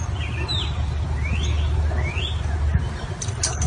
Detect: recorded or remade recorded